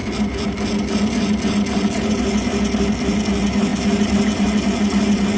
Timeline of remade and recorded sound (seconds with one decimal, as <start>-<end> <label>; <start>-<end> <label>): 0.0-5.4 recorded